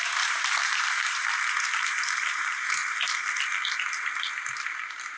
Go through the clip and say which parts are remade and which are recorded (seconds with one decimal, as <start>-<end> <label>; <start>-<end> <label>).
0.0-1.2 remade; 1.2-1.8 recorded; 1.8-2.8 remade; 2.8-4.5 recorded; 4.5-5.2 remade